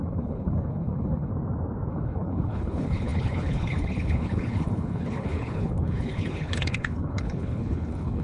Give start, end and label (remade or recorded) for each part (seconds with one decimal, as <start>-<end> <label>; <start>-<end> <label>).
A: 0.0-1.3 remade; 1.3-1.9 recorded; 1.9-8.2 remade